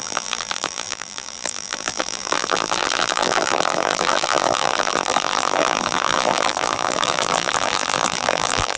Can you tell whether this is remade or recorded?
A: remade